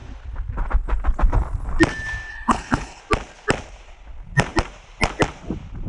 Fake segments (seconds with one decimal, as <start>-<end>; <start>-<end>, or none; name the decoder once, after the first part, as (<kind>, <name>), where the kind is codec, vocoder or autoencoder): 2.3-3.0 (codec, HILCodec)